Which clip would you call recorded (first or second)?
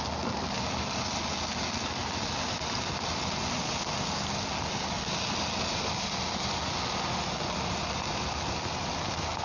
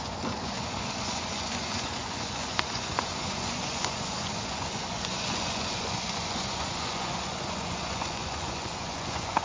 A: first